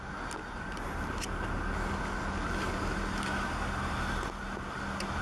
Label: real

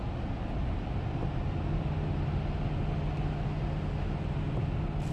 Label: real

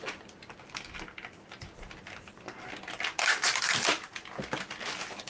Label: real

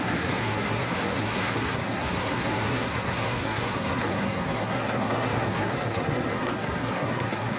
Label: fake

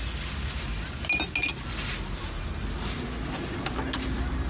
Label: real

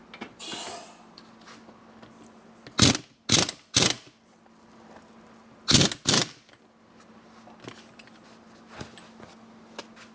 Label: real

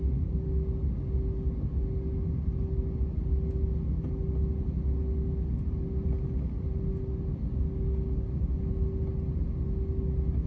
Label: real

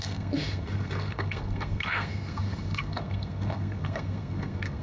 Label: fake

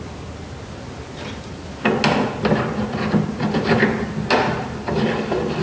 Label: real